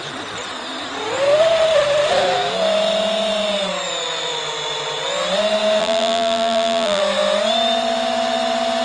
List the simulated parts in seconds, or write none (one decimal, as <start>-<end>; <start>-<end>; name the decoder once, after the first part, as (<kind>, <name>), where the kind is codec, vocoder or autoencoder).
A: 5.8-7.0 (vocoder, BigVGAN v2)